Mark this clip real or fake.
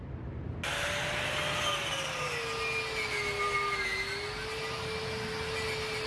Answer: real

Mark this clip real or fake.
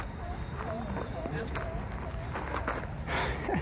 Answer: real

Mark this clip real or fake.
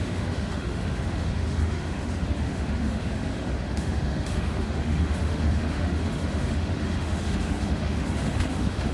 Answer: fake